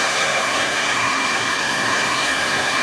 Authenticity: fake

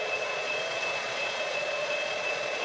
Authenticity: fake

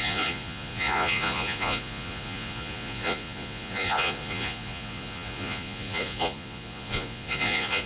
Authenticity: fake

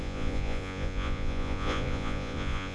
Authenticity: fake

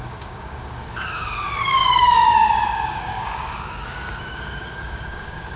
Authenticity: fake